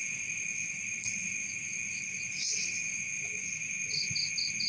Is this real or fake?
real